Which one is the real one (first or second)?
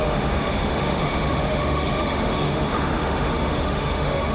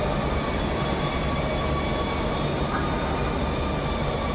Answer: second